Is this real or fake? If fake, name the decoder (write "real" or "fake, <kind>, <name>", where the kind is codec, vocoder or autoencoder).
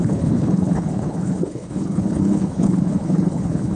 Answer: fake, codec, HILCodec